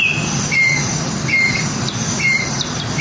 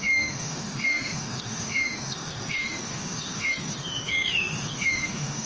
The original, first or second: first